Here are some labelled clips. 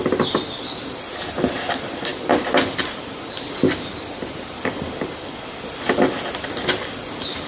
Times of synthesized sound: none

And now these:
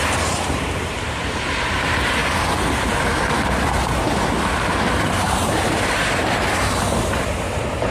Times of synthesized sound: 0.0-2.2; 4.7-7.9

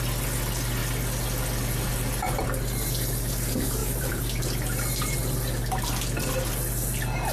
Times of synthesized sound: 3.8-4.4

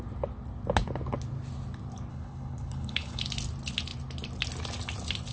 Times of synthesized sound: 2.1-3.2

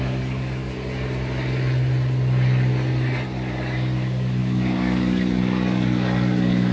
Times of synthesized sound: 0.0-0.6; 3.5-6.7

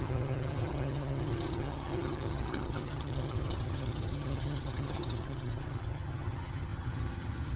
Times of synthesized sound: 0.0-7.6

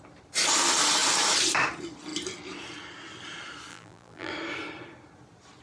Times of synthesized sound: 3.7-4.3